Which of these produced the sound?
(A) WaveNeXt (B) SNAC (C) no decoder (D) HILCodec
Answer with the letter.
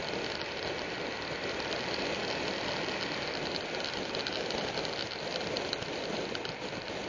C